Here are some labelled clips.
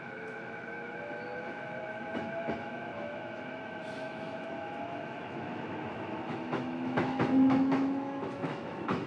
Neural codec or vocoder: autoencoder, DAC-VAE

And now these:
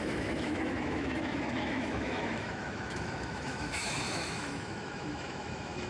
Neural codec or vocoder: autoencoder, DAC-VAE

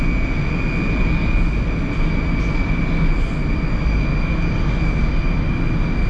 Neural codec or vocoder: none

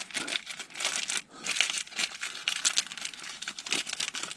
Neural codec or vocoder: none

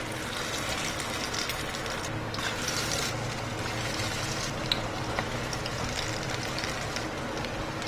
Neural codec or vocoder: none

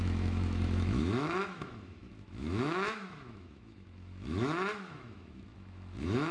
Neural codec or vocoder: autoencoder, DAC-VAE